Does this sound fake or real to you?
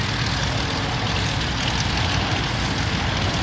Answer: real